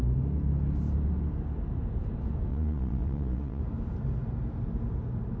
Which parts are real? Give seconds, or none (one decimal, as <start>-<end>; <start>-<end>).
0.0-2.5; 3.6-5.4